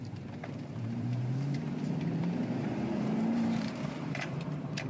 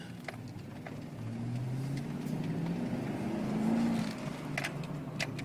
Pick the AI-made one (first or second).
first